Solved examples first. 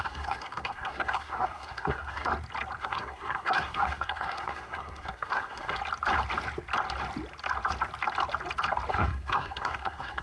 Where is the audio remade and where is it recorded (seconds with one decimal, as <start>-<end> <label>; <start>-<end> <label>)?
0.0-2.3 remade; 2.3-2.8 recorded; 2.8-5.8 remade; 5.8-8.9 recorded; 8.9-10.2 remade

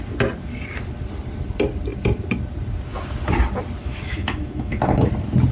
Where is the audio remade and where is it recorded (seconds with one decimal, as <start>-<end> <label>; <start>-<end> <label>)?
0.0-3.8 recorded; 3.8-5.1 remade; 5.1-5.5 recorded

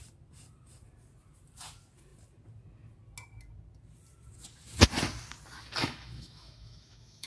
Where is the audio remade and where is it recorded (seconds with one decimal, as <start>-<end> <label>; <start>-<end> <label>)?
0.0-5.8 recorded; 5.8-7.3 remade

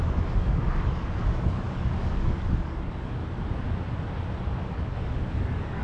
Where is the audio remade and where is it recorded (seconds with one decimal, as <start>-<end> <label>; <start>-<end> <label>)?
0.0-3.2 remade; 3.2-4.6 recorded; 4.6-5.8 remade

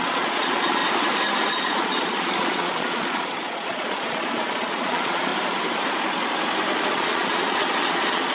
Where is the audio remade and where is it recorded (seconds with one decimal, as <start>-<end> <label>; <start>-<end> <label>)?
0.0-0.8 remade; 0.8-1.5 recorded; 1.5-5.3 remade; 5.3-6.9 recorded; 6.9-8.3 remade

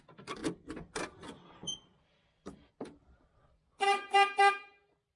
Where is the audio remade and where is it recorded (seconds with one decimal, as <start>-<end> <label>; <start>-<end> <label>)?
0.0-1.6 recorded; 1.6-4.7 remade; 4.7-5.2 recorded